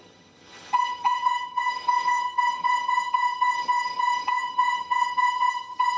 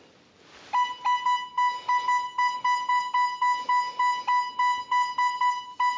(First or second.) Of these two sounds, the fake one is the first